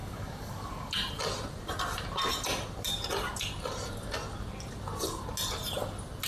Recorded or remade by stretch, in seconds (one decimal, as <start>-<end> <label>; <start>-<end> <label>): 0.0-0.9 remade; 0.9-6.3 recorded